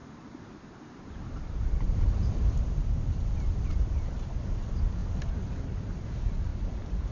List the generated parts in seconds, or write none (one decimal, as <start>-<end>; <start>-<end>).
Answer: 0.0-4.3